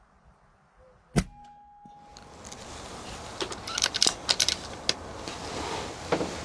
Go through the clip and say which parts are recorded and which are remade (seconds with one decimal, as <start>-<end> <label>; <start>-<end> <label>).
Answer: 0.0-6.4 recorded